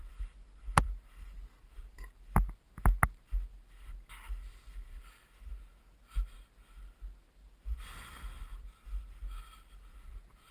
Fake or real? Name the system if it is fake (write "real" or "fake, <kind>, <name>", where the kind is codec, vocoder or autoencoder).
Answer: real